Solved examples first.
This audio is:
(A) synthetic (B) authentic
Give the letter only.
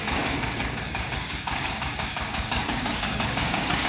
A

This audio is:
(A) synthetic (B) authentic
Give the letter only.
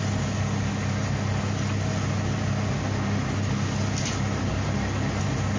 B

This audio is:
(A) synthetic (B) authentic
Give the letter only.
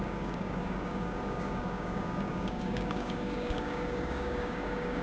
A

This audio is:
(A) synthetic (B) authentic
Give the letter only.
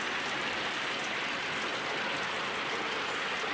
B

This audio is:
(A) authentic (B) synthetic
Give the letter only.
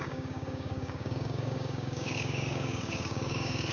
B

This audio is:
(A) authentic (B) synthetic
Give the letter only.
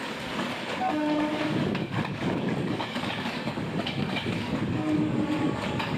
B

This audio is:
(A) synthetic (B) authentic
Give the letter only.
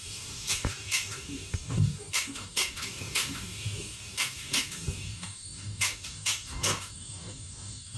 A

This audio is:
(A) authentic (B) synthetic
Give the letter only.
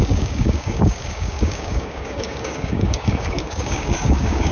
B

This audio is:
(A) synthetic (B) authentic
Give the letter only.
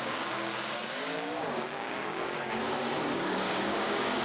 A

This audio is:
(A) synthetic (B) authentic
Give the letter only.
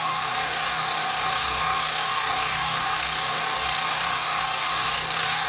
A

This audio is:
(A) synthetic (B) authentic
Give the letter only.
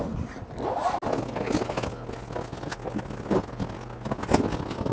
B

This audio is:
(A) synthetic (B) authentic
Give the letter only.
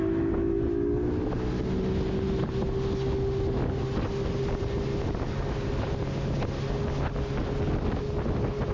B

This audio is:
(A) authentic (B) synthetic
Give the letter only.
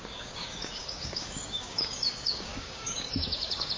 B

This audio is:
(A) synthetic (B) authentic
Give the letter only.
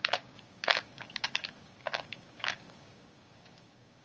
A